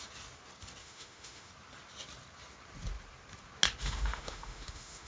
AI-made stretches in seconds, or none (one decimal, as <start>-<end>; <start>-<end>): 0.8-1.5; 3.8-5.1